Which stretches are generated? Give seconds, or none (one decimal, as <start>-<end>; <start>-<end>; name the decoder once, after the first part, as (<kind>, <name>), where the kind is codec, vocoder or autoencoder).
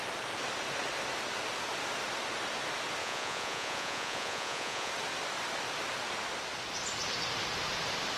3.0-4.9 (vocoder, Vocos)